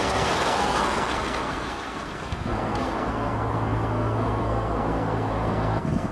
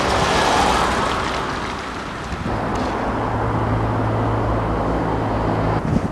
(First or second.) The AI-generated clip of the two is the first